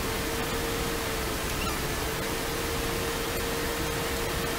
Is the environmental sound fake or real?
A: real